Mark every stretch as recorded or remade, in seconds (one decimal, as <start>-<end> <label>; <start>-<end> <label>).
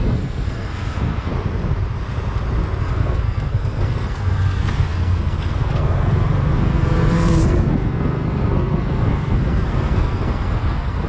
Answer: 0.0-1.3 remade; 1.3-2.8 recorded; 2.8-11.1 remade